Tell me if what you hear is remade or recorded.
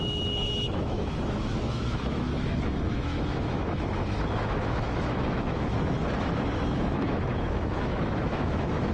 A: remade